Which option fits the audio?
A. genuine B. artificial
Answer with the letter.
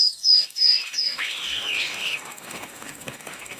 B